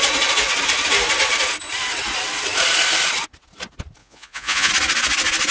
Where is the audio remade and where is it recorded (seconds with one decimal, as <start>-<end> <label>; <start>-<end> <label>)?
0.0-4.0 recorded; 4.0-4.7 remade; 4.7-5.5 recorded

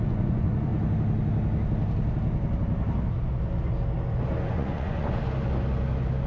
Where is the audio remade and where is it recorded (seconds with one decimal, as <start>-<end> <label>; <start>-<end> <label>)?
0.0-0.7 remade; 0.7-4.5 recorded; 4.5-5.2 remade; 5.2-6.3 recorded

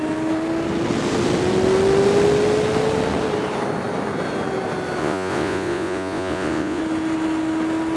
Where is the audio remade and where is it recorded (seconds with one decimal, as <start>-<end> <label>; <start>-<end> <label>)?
0.0-5.0 recorded; 5.0-6.8 remade; 6.8-8.0 recorded

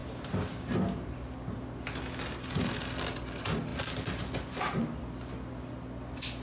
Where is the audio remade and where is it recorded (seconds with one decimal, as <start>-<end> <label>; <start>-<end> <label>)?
0.0-6.4 recorded

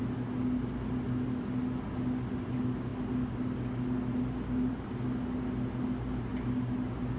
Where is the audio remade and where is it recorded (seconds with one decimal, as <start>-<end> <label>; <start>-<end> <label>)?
0.0-7.2 recorded

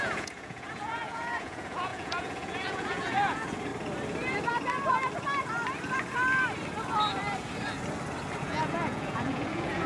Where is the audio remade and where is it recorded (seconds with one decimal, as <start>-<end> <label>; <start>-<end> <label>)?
0.0-3.7 remade; 3.7-8.4 recorded; 8.4-9.9 remade